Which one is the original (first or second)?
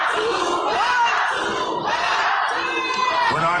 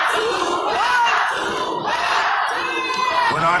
first